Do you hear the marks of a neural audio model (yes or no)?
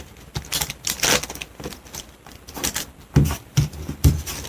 no